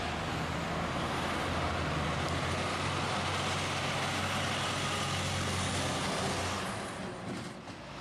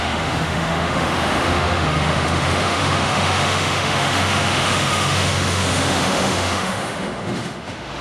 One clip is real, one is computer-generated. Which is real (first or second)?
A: first